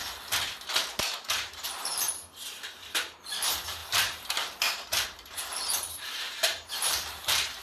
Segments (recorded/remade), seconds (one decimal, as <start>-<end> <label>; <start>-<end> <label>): 0.0-1.5 recorded; 1.5-7.6 remade